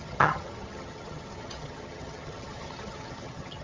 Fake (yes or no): yes